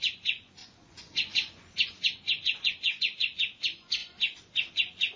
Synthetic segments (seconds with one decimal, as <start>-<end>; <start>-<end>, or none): 0.0-5.2